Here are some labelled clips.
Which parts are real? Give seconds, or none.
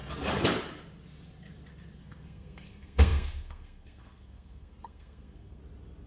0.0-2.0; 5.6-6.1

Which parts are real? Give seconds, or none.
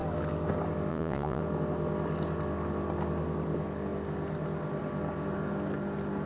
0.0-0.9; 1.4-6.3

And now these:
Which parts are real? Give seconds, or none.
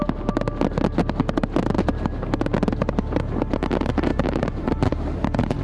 0.0-4.1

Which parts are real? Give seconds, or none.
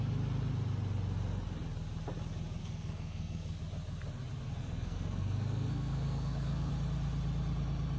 0.0-2.6; 3.6-4.6; 6.7-8.0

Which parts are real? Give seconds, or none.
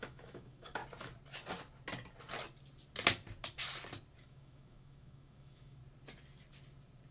0.8-4.2; 5.8-7.1